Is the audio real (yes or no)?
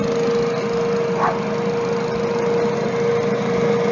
yes